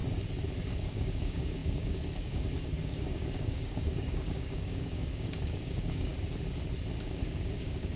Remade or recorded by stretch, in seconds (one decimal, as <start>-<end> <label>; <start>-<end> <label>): 0.0-0.6 recorded; 0.6-6.1 remade; 6.1-7.0 recorded; 7.0-8.0 remade